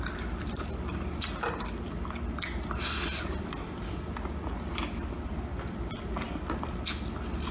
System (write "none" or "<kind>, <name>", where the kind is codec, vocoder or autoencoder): none